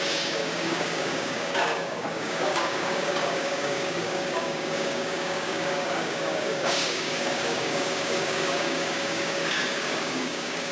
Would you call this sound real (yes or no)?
no